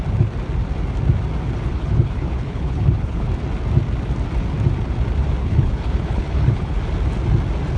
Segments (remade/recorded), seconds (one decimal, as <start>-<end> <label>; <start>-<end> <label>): 0.0-1.7 recorded; 1.7-3.3 remade; 3.3-5.4 recorded; 5.4-6.8 remade; 6.8-7.8 recorded